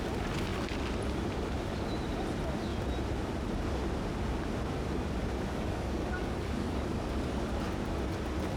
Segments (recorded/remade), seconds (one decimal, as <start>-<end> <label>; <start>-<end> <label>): 0.0-5.2 recorded; 5.2-7.5 remade; 7.5-8.6 recorded

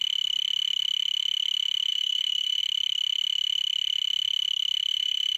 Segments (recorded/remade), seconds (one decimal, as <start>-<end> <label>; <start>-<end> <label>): 0.0-1.9 recorded; 1.9-2.6 remade; 2.6-4.9 recorded; 4.9-5.4 remade

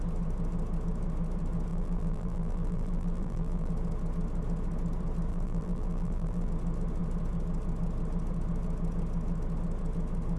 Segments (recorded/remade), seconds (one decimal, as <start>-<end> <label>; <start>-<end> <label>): 0.0-1.7 recorded; 1.7-3.7 remade; 3.7-5.3 recorded; 5.3-6.5 remade; 6.5-10.4 recorded

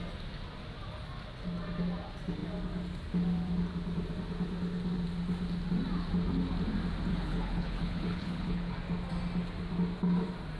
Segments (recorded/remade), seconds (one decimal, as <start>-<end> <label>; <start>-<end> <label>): 0.0-7.1 recorded; 7.1-8.7 remade; 8.7-10.6 recorded

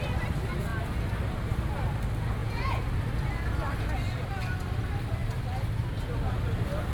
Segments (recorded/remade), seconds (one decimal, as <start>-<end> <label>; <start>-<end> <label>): 0.0-2.4 recorded; 2.4-2.9 remade; 2.9-6.9 recorded

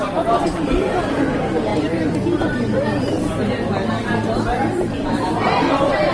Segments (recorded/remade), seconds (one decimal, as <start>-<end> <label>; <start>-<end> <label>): 0.0-1.7 recorded; 1.7-3.9 remade; 3.9-4.6 recorded; 4.6-6.1 remade

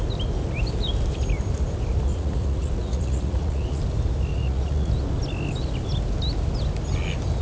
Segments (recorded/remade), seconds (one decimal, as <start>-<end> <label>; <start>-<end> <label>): 0.0-2.1 recorded; 2.1-3.8 remade; 3.8-4.3 recorded; 4.3-4.9 remade; 4.9-7.4 recorded

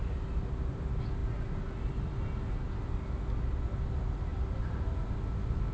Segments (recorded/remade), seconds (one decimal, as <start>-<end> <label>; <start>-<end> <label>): 0.0-5.7 recorded